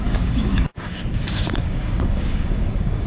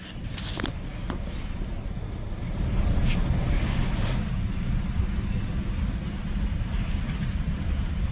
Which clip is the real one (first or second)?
second